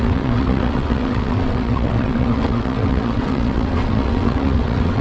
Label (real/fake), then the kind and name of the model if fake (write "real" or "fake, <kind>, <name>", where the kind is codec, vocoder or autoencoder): fake, vocoder, WaveNeXt